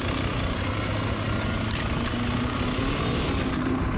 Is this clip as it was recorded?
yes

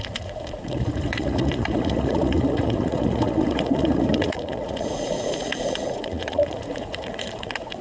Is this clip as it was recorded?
no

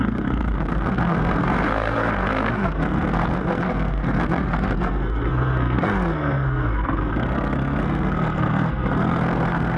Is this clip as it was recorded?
no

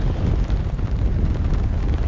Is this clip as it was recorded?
yes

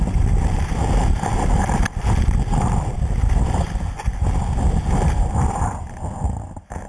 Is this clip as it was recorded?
no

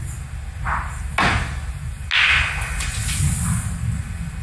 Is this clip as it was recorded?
yes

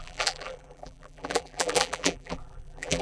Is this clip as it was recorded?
no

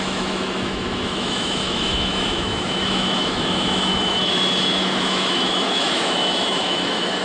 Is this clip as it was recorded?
no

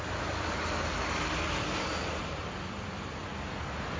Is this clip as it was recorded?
yes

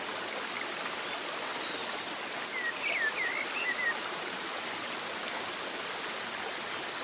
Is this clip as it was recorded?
yes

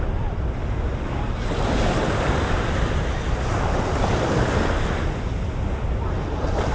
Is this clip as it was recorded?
yes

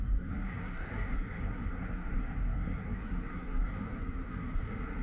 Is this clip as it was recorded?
no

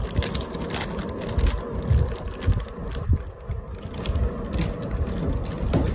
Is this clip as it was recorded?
yes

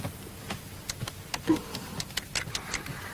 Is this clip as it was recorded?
yes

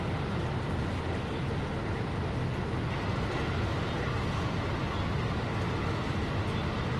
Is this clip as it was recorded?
yes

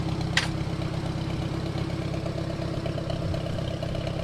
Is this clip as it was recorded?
yes